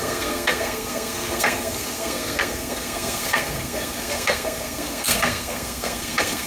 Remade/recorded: remade